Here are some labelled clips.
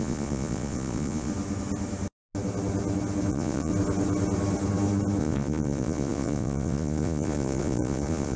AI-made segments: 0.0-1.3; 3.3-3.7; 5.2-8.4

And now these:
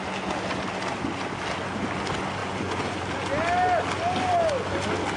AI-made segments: 2.4-3.0

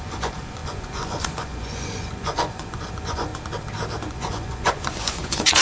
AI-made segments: 0.0-3.3; 4.1-5.6

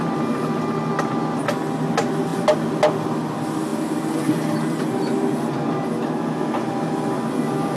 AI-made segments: none